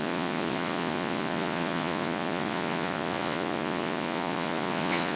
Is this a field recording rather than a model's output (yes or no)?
no